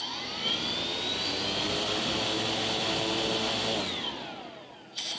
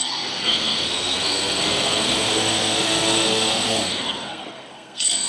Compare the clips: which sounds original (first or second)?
first